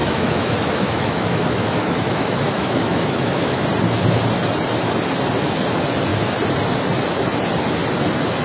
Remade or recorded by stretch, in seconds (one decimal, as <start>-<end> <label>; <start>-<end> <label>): 0.0-3.6 remade; 3.6-8.4 recorded